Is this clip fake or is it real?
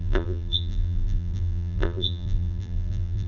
fake